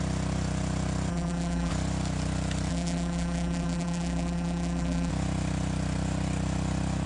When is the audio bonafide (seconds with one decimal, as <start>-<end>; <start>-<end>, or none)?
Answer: 0.0-1.1; 1.7-2.7; 5.1-7.1